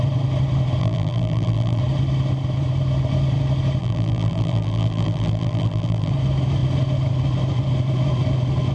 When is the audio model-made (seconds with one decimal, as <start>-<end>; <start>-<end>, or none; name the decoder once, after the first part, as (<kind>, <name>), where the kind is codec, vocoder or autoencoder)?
0.8-1.8 (vocoder, BigVGAN v2); 3.8-6.1